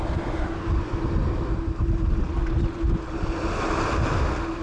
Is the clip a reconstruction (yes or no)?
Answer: no